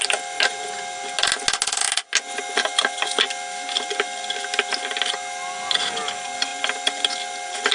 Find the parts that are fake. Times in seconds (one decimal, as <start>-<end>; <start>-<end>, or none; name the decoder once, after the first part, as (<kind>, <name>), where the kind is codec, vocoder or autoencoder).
none